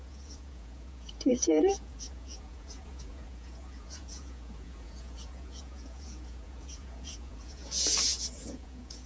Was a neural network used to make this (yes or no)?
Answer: yes